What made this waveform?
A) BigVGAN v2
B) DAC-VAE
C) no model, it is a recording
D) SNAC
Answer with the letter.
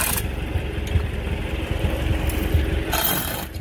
C